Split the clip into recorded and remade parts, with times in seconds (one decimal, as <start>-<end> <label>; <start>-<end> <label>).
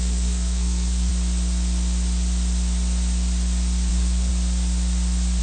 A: 0.0-1.1 remade; 1.1-3.9 recorded; 3.9-4.3 remade; 4.3-5.4 recorded